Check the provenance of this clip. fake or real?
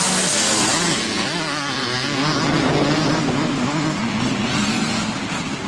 real